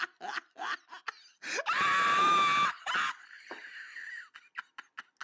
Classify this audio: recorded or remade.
recorded